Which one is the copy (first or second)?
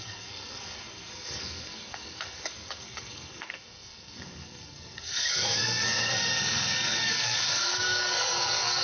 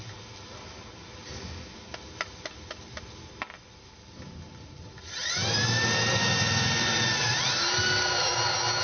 first